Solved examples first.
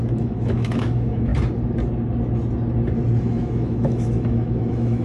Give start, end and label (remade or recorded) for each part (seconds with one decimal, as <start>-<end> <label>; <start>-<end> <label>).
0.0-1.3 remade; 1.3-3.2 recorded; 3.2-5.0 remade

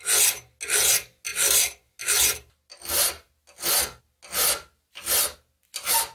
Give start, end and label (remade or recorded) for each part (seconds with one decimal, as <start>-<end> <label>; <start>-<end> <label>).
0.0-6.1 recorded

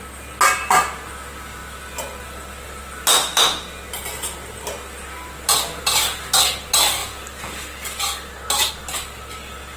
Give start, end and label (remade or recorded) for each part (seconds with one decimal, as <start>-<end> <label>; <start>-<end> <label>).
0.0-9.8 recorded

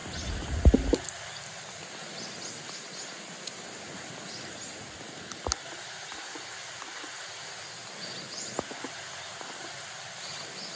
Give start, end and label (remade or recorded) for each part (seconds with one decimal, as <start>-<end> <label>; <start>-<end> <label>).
0.0-10.8 recorded

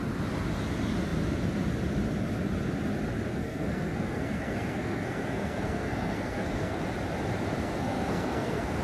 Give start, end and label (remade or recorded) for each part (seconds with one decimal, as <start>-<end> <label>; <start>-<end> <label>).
0.0-3.3 recorded; 3.3-6.8 remade; 6.8-7.6 recorded; 7.6-8.8 remade

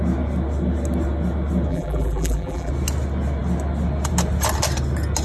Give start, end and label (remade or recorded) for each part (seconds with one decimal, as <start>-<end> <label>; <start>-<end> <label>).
0.0-1.7 recorded; 1.7-2.7 remade; 2.7-5.2 recorded